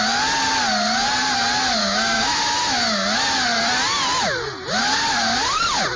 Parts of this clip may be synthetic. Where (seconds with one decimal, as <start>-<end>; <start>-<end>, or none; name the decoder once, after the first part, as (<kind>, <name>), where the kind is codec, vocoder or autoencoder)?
1.8-2.3 (codec, DAC)